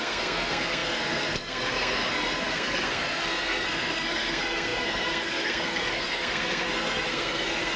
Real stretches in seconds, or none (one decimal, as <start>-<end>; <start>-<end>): none

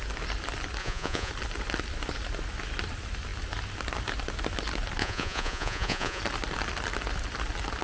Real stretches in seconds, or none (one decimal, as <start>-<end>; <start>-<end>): 0.0-0.8; 1.3-5.0; 6.2-7.8

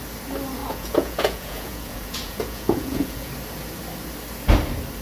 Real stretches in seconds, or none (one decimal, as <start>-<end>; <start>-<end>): 0.0-0.6; 3.3-5.0

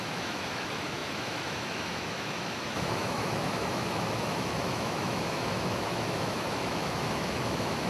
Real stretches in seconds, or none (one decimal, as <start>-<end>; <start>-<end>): none

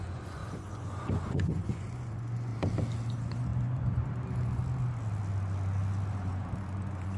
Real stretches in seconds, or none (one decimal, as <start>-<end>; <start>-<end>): 2.5-3.1; 4.6-6.1

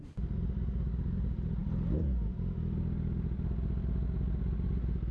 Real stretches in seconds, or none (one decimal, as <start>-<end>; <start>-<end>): 0.0-5.1

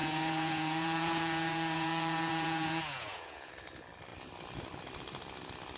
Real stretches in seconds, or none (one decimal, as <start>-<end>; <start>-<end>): 3.5-5.8